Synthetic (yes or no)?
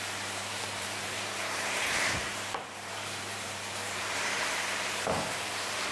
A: yes